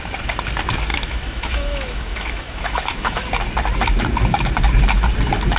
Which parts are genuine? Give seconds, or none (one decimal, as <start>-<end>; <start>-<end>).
0.0-0.9; 3.3-5.6